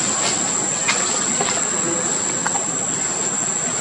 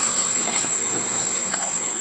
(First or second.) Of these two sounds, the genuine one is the first